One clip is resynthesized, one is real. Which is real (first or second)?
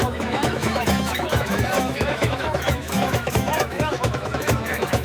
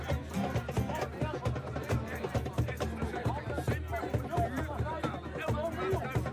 second